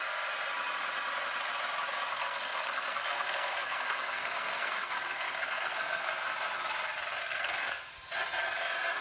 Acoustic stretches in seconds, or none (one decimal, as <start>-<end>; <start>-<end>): 0.0-2.1; 6.1-7.1; 7.9-9.0